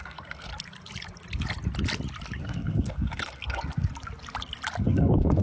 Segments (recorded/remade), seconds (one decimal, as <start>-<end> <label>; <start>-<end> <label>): 0.0-0.5 remade; 0.5-2.4 recorded; 2.4-3.9 remade; 3.9-4.8 recorded; 4.8-5.4 remade

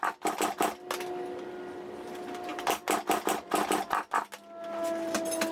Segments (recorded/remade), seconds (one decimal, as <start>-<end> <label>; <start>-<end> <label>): 0.0-5.5 recorded

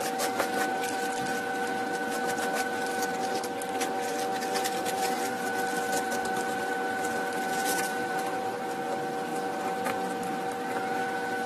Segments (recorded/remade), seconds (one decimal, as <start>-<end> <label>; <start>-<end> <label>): 0.0-3.2 recorded; 3.2-5.5 remade; 5.5-7.6 recorded; 7.6-8.6 remade; 8.6-11.5 recorded

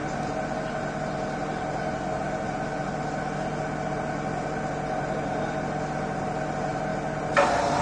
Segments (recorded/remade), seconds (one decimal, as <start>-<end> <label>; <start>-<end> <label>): 0.0-7.8 recorded

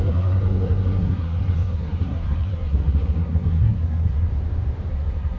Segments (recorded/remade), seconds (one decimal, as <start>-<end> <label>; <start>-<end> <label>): 0.0-4.3 remade; 4.3-4.9 recorded; 4.9-5.4 remade

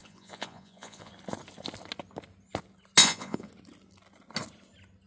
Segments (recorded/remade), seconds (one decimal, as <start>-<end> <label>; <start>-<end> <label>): 0.0-1.1 remade; 1.1-3.0 recorded; 3.0-3.5 remade; 3.5-5.1 recorded

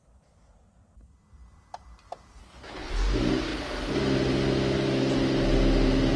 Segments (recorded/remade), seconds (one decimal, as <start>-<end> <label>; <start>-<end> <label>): 0.0-2.4 recorded; 2.4-2.9 remade; 2.9-6.2 recorded